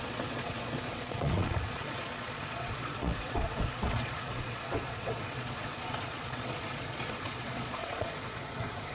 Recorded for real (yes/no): no